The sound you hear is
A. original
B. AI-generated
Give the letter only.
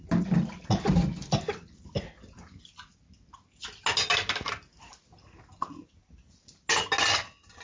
A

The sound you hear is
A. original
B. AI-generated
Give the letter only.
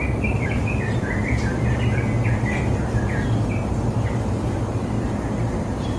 A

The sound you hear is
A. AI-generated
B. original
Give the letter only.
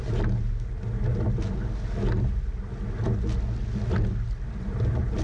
B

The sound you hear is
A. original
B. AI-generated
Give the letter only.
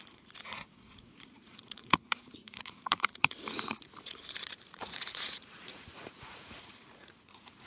B